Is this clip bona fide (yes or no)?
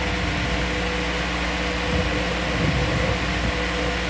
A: yes